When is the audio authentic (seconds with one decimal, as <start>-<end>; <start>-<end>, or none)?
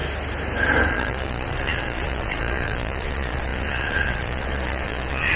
0.0-0.9